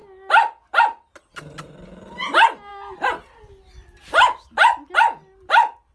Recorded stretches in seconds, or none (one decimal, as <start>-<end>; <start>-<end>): 0.0-5.9